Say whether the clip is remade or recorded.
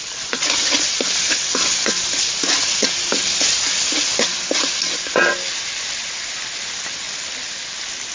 recorded